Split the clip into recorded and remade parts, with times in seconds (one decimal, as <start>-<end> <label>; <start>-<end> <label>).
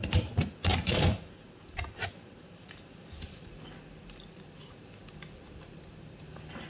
0.0-0.7 recorded; 0.7-3.5 remade; 3.5-6.7 recorded